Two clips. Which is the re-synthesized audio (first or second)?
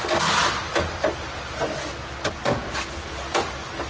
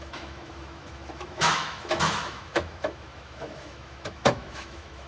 second